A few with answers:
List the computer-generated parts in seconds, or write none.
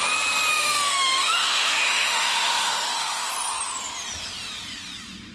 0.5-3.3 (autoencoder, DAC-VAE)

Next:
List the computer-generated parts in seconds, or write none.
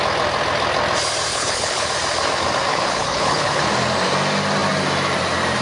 1.3-1.9 (codec, HILCodec); 2.7-3.6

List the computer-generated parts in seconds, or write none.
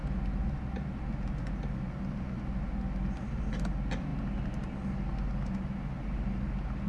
none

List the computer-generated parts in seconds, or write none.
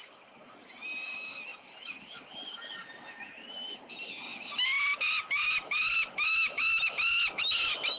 none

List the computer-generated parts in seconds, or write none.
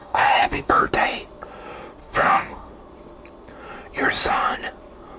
0.0-0.9 (codec, DAC); 2.0-2.7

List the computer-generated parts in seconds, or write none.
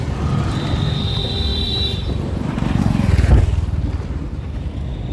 1.5-2.8 (vocoder, BigVGAN v2)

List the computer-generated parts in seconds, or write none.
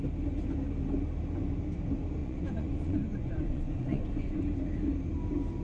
2.2-4.4 (vocoder, Vocos)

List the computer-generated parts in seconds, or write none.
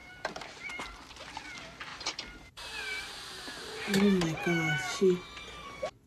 0.0-0.7 (vocoder, BigVGAN v2); 1.9-3.5